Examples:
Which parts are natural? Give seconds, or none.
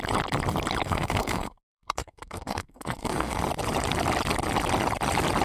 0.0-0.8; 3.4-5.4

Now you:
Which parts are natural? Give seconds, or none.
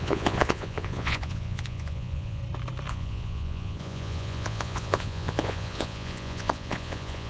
2.4-2.9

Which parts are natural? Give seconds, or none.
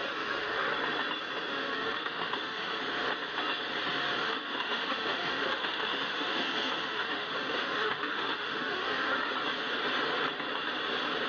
0.7-1.5; 2.8-4.2; 9.3-11.3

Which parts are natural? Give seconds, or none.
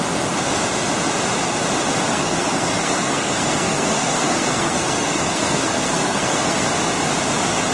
0.0-2.1; 6.7-7.7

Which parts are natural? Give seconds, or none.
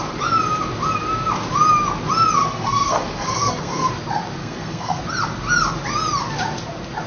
0.0-2.4; 3.9-4.4; 5.0-7.1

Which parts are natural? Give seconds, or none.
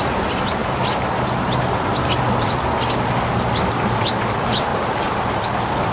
0.0-4.7; 5.5-5.9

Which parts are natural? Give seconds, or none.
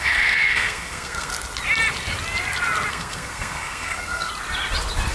1.3-2.9; 4.3-5.1